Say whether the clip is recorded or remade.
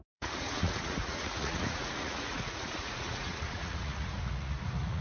remade